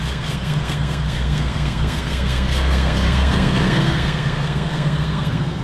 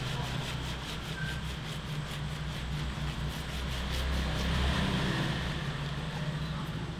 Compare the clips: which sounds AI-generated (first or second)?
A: first